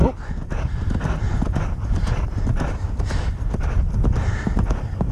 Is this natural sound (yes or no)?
yes